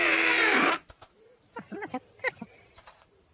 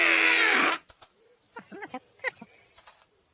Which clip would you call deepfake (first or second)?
first